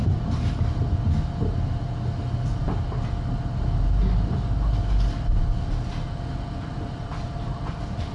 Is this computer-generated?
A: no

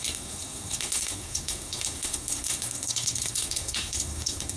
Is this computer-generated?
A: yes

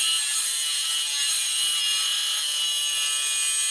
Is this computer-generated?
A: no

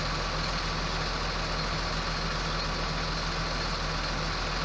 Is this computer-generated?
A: no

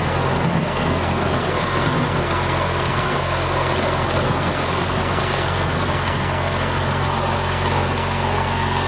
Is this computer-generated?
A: yes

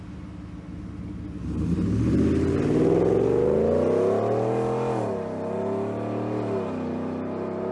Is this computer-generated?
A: no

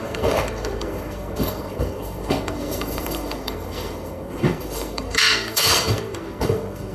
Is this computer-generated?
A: yes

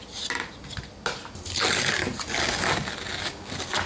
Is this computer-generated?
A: no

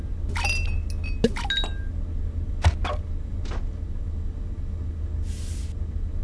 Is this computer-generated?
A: no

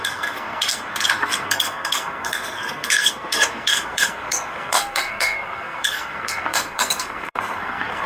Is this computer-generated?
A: yes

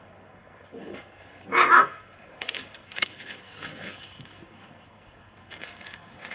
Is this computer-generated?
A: yes